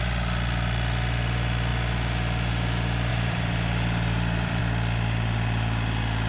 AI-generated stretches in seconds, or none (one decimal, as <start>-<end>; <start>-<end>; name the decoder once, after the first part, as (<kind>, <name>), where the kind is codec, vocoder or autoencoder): 3.1-4.6 (vocoder, BigVGAN v2)